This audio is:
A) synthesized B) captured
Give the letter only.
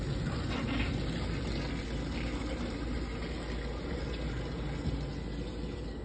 B